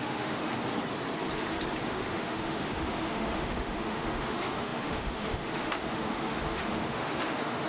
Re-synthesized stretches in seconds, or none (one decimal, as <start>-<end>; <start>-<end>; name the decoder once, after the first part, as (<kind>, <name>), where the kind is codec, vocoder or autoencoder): 0.0-0.5 (autoencoder, DAC-VAE); 1.8-7.7